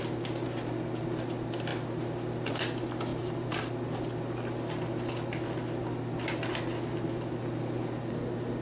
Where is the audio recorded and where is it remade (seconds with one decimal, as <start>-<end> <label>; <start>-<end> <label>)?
0.0-3.1 recorded; 3.1-3.7 remade; 3.7-8.6 recorded